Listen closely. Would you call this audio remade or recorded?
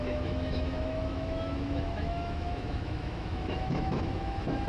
remade